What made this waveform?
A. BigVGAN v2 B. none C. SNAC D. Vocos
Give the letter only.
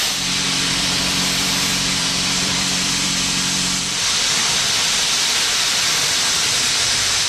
A